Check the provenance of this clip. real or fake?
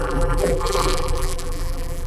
fake